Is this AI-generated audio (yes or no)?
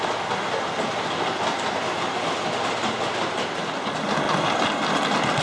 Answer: no